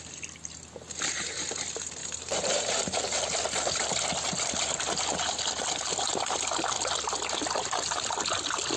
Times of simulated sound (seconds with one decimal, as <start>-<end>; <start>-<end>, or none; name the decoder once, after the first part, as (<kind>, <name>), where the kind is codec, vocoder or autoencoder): 2.0-3.0 (vocoder, BigVGAN v2)